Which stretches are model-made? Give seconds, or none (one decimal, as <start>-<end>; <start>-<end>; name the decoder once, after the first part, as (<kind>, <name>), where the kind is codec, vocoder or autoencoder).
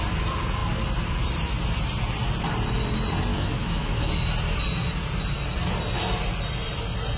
3.3-4.1 (autoencoder, DAC-VAE)